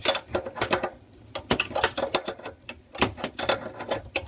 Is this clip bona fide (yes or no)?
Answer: yes